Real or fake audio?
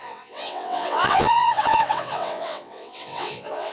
fake